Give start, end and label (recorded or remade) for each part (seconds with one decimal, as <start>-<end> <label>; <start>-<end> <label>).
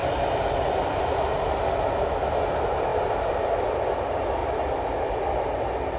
0.0-6.0 recorded